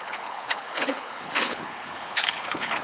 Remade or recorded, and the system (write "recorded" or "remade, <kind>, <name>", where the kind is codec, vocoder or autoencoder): remade, codec, HILCodec